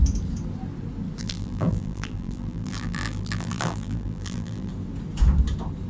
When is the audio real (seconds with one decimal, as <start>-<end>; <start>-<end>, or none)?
0.0-1.2; 4.7-5.9